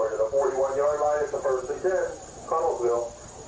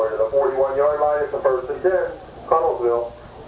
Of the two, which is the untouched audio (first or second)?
second